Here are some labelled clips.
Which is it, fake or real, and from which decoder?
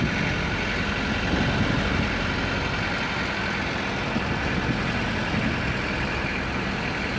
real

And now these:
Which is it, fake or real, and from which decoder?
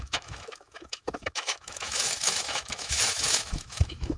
fake, autoencoder, DAC-VAE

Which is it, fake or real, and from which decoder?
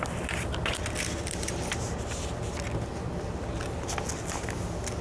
real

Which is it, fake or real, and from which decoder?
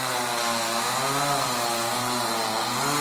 real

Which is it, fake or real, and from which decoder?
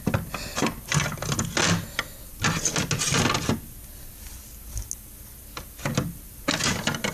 real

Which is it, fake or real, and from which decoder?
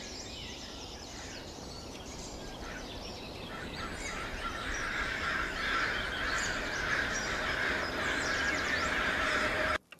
fake, vocoder, BigVGAN v2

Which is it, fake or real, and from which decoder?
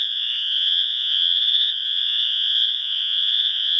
fake, vocoder, Vocos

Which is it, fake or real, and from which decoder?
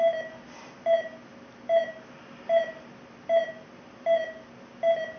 real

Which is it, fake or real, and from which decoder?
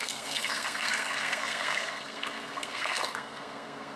fake, codec, SNAC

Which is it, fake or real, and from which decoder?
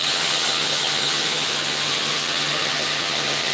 fake, vocoder, HiFi-GAN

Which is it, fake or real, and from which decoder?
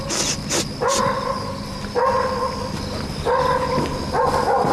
real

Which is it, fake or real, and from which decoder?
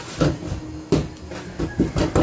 real